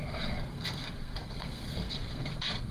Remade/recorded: remade